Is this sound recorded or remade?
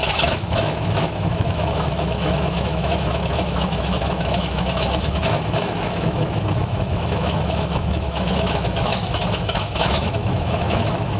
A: remade